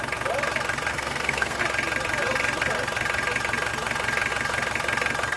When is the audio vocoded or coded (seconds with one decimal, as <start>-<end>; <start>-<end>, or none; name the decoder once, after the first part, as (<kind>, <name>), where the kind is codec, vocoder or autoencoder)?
0.9-1.6 (codec, SNAC)